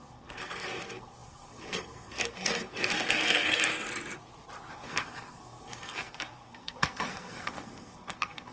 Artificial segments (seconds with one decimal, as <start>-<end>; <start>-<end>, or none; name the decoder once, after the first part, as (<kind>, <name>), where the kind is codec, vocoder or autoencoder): 0.0-3.7 (codec, SNAC); 4.7-8.5